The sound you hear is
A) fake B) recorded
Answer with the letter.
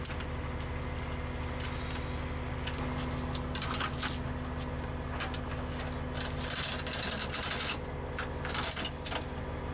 B